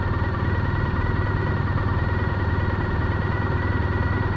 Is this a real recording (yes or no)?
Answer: yes